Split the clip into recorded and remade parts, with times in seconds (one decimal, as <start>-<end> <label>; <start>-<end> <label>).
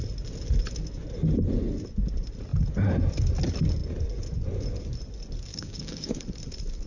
0.0-5.5 recorded; 5.5-6.2 remade; 6.2-6.9 recorded